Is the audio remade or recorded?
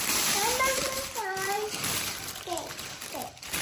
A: remade